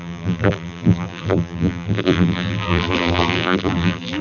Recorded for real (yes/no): no